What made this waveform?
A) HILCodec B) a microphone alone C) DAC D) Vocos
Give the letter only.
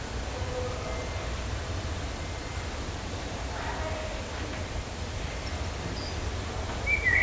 B